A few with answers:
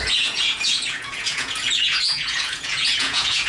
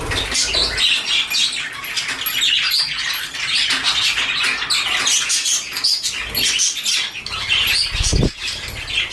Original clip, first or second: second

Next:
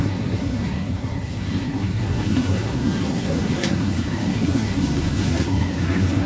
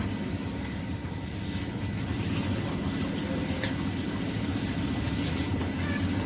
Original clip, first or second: second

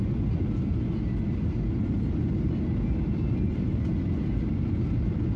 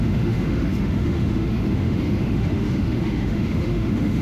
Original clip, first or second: first